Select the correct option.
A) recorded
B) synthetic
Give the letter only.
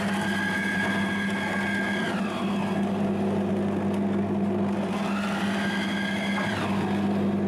A